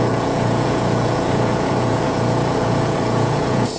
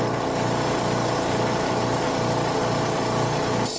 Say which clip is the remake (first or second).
first